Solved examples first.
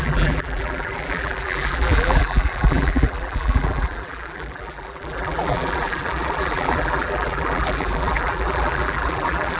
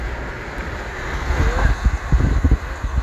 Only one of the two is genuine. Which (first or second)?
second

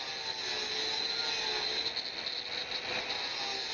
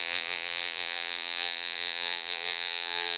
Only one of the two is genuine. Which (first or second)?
first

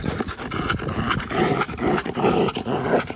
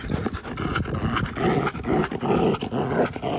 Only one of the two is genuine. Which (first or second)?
second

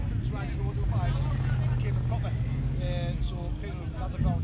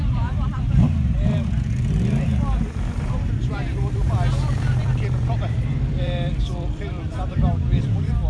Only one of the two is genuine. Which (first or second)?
first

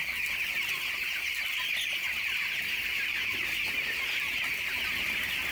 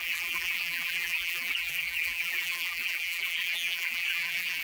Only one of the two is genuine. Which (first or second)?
first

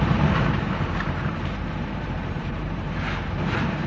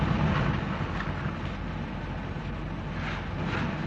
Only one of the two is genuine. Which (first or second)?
second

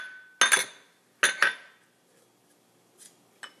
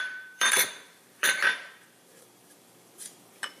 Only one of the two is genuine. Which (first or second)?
first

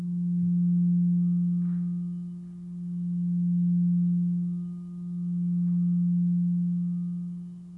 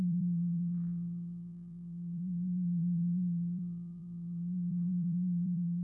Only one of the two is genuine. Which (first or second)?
first